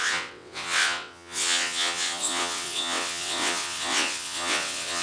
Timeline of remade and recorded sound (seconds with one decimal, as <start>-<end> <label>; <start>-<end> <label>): 0.0-5.0 remade